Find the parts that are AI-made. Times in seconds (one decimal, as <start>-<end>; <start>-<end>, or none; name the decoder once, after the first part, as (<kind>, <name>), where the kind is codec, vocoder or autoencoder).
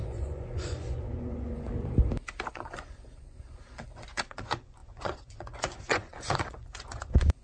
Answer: 0.0-1.7 (vocoder, Vocos); 2.5-7.4